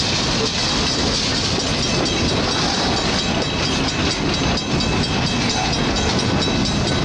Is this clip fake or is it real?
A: real